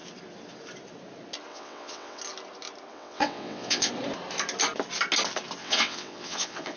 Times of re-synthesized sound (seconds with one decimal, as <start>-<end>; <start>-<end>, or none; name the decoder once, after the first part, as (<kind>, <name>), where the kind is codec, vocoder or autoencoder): 1.5-2.2 (vocoder, WaveNeXt); 2.9-3.9; 5.6-6.8

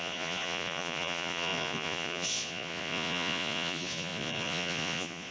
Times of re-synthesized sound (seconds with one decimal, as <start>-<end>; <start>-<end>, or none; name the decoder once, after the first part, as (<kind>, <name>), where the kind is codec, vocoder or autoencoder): 0.0-5.3 (vocoder, Vocos)

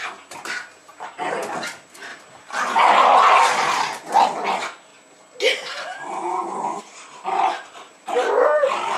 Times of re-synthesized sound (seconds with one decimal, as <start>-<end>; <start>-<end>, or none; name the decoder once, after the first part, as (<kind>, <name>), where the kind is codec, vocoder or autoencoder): none

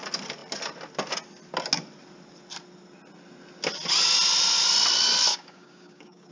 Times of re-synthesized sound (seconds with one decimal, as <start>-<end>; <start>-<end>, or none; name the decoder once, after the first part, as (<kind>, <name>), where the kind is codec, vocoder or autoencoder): 5.3-6.3 (codec, DAC)

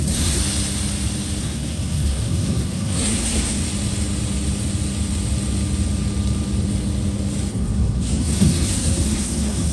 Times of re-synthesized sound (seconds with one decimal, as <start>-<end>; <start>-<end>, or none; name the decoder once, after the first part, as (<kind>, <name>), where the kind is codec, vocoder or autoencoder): 0.0-0.4 (codec, SNAC); 1.4-3.6; 7.5-9.7

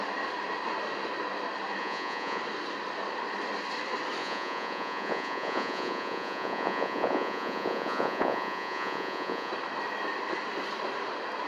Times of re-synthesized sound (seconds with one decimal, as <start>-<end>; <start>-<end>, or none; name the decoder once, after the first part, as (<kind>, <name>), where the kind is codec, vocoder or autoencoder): 1.8-2.4 (vocoder, Vocos); 4.2-9.5

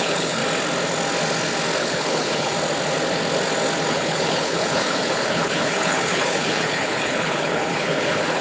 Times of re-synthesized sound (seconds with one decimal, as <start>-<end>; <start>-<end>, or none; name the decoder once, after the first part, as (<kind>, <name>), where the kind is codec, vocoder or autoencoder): 0.0-0.4 (codec, HILCodec); 1.8-2.5; 3.9-8.4